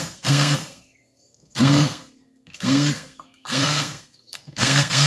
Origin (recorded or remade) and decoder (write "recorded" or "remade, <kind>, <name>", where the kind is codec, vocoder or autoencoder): remade, codec, SNAC